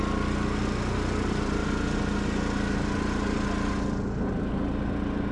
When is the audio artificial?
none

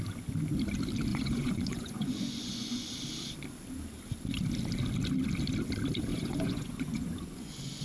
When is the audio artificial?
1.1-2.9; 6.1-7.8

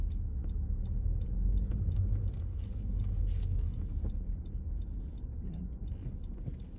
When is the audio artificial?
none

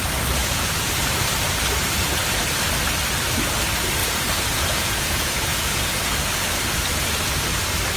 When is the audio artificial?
0.4-0.9; 4.0-6.3

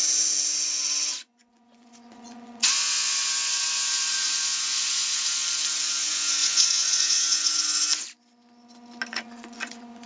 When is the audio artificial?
0.0-5.4; 5.9-7.9; 9.1-10.1

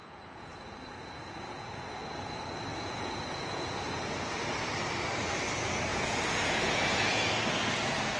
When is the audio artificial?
0.0-1.8; 2.7-4.1; 5.9-7.3

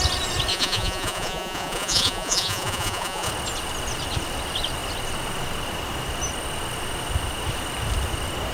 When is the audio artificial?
0.5-3.3

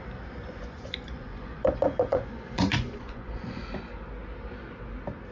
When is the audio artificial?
0.4-3.6